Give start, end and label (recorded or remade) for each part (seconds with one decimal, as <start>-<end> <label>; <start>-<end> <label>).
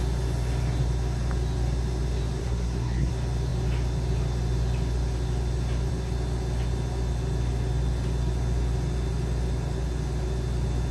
0.0-2.4 recorded; 2.4-3.1 remade; 3.1-10.9 recorded